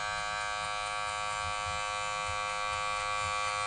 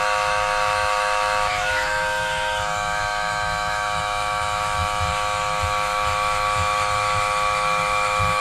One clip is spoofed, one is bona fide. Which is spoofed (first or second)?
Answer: second